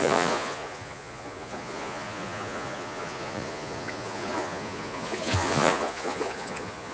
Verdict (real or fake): fake